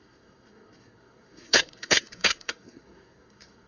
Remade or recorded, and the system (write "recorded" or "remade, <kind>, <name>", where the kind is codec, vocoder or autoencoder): remade, codec, SNAC